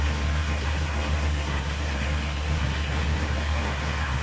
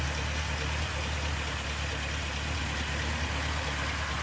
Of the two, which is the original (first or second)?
second